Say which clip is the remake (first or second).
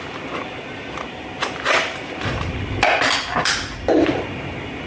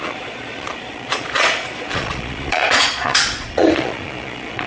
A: second